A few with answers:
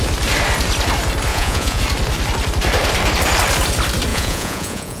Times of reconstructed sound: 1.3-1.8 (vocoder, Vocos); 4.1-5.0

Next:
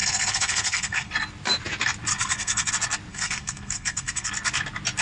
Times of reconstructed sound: 0.0-1.1 (codec, SNAC); 2.1-2.7; 3.1-4.3

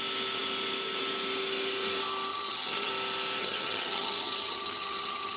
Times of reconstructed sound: 2.3-2.9 (vocoder, HiFi-GAN); 3.4-5.4